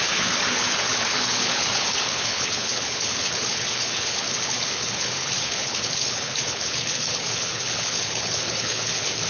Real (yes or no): no